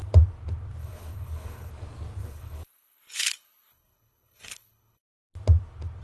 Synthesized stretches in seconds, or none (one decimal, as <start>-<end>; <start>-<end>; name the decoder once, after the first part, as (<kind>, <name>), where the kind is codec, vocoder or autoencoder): 0.8-1.7 (codec, HILCodec); 2.2-5.0